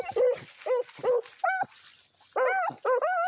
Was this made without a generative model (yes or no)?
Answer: yes